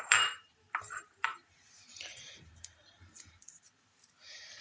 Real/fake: fake